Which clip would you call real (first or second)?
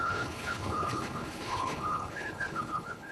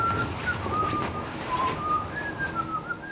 second